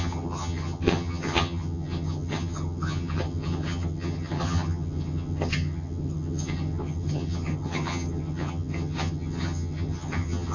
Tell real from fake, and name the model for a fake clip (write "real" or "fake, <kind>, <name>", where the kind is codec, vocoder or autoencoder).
fake, vocoder, HiFi-GAN